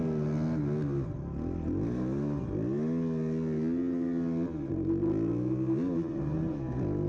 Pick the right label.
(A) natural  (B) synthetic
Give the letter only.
A